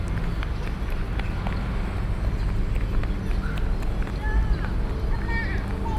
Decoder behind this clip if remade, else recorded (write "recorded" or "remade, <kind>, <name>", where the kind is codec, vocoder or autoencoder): recorded